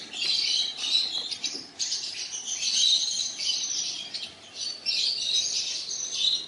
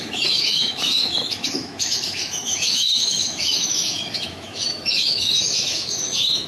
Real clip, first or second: first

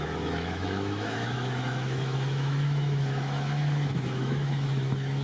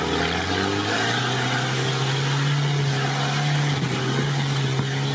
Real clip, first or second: second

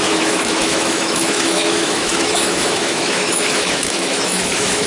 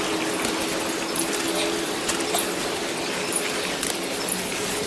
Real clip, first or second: second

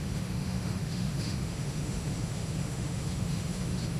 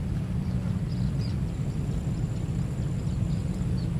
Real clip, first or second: second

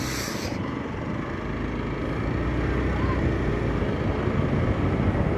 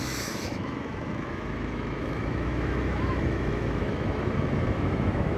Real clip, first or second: first